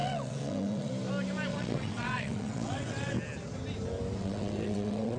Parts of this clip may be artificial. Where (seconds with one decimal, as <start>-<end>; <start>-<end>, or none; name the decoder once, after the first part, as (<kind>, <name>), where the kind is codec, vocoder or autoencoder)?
0.0-0.9 (vocoder, WaveNeXt); 1.5-3.1; 4.2-5.2